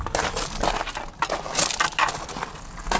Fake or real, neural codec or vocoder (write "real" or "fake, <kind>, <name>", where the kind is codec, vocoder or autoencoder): real